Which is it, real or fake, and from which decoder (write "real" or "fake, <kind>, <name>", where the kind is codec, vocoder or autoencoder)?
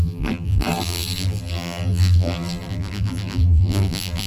fake, vocoder, BigVGAN v2